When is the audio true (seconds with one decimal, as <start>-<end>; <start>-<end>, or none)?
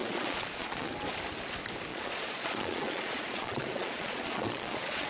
0.9-1.9